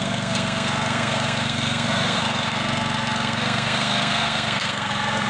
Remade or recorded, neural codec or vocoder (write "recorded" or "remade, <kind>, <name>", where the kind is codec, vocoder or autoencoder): remade, codec, SNAC